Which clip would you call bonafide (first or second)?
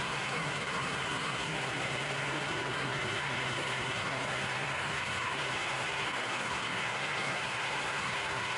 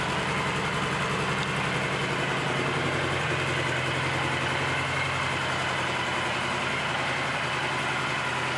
second